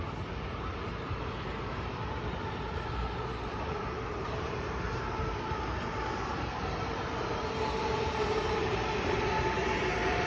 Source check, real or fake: fake